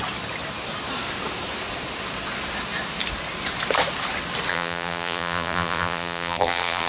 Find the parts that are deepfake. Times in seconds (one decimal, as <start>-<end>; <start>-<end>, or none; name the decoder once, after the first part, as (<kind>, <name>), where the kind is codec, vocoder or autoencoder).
4.5-6.9 (vocoder, BigVGAN v2)